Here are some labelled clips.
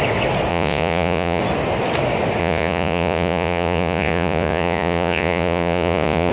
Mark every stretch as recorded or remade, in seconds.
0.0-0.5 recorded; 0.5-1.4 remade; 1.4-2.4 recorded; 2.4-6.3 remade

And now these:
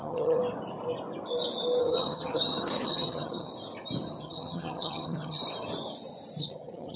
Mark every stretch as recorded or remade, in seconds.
0.0-0.4 remade; 0.4-1.8 recorded; 1.8-3.5 remade; 3.5-4.2 recorded; 4.2-5.4 remade; 5.4-6.4 recorded; 6.4-7.0 remade

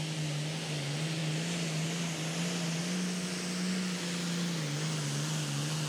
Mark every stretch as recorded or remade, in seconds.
0.0-5.9 recorded